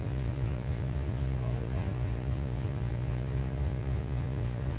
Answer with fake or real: fake